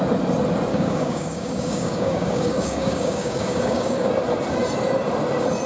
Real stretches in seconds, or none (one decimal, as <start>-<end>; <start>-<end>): 0.0-0.7; 4.1-5.7